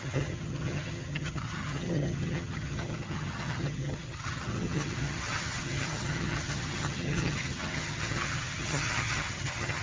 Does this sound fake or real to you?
fake